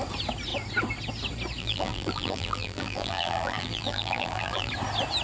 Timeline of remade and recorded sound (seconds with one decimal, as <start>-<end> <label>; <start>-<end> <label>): 0.0-1.6 recorded; 1.6-4.7 remade; 4.7-5.2 recorded